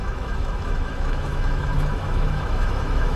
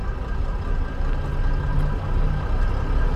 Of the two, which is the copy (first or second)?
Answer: first